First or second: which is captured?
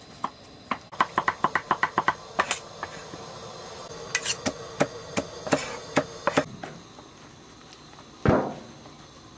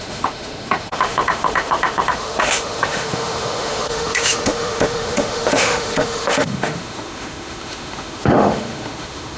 first